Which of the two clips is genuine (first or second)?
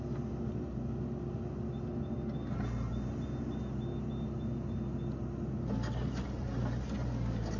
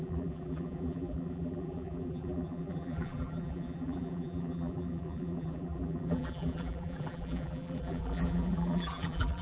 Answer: first